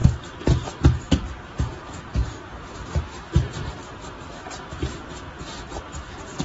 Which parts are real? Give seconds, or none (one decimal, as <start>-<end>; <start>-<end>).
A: 0.0-6.4